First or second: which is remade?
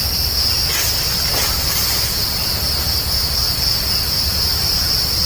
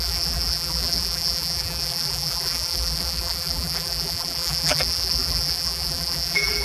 second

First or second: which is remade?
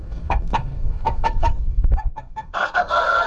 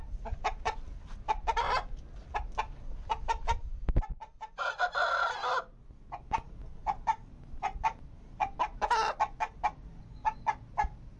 first